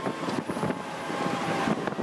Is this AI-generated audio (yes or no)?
no